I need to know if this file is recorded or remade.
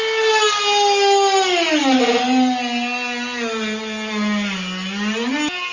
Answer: recorded